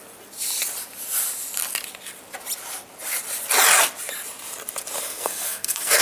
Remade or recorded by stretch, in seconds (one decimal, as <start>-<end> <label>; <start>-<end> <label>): 0.0-5.1 recorded; 5.1-6.0 remade